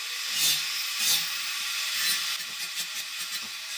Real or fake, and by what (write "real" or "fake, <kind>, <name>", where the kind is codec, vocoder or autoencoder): real